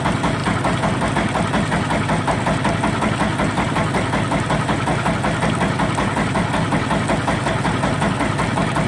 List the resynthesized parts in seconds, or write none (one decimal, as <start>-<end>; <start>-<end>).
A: none